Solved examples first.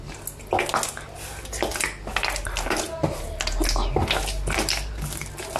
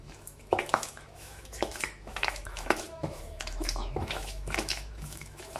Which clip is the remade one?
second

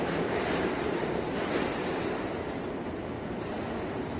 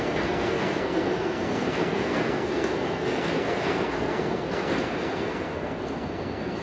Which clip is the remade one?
second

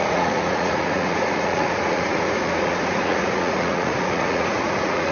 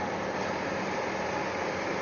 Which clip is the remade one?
first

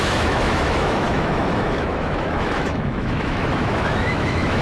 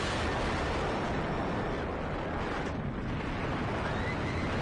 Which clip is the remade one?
first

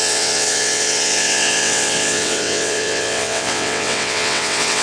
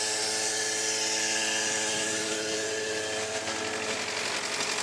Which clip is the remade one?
first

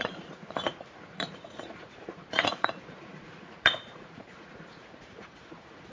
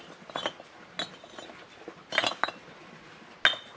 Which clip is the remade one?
first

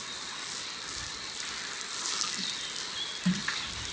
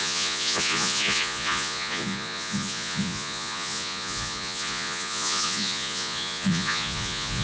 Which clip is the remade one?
second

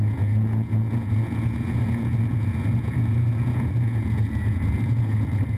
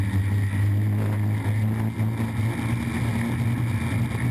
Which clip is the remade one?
first